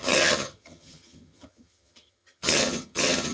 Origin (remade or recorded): remade